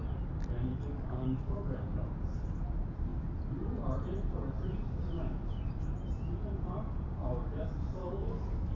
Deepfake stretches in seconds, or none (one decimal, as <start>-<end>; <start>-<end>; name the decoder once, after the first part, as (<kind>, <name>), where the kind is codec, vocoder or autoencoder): 0.7-1.8 (codec, DAC); 8.0-8.8